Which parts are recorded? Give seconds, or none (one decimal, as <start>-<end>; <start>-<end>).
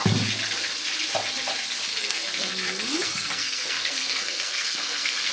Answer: 0.0-1.9